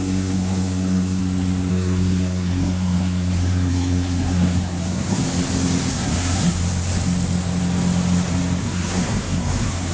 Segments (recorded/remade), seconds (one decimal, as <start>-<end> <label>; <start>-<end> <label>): 0.0-1.2 remade; 1.2-1.7 recorded; 1.7-5.2 remade; 5.2-5.9 recorded; 5.9-6.6 remade; 6.6-8.6 recorded; 8.6-9.9 remade